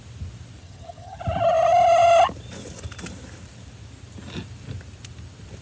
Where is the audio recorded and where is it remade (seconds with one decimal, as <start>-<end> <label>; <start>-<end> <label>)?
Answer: 0.0-0.6 recorded; 0.6-1.2 remade; 1.2-5.6 recorded